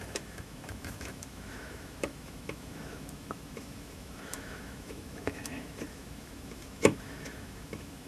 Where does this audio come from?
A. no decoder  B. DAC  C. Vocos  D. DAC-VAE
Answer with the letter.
D